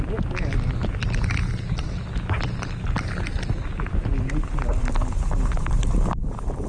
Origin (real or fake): real